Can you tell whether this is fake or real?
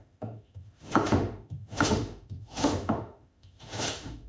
fake